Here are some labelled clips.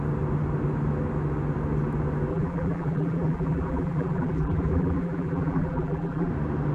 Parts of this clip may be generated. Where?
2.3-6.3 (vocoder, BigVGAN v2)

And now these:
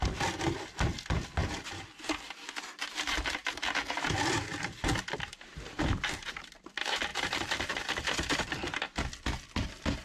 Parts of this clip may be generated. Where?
none

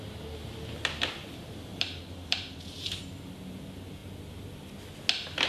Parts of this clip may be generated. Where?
1.7-3.0 (vocoder, BigVGAN v2)

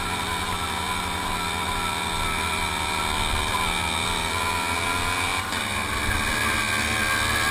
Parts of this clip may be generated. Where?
5.3-6.0 (vocoder, BigVGAN v2)